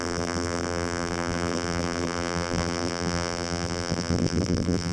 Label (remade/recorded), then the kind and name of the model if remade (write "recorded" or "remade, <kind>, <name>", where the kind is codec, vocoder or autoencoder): remade, vocoder, BigVGAN v2